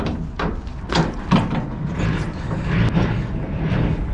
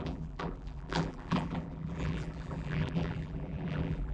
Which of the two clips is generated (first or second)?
second